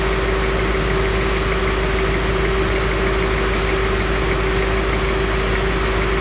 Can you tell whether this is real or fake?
real